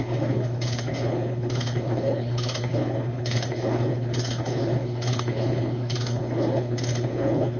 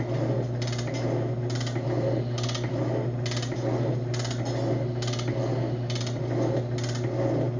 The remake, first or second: first